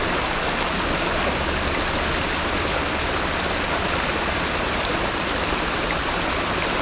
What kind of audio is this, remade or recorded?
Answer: recorded